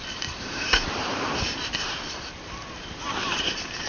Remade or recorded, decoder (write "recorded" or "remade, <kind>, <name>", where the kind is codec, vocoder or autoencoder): remade, vocoder, BigVGAN v2